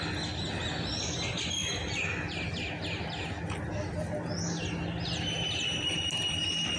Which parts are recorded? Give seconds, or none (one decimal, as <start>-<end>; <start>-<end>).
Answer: 0.0-6.8